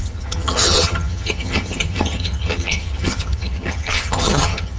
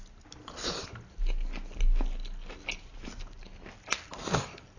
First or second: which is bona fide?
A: second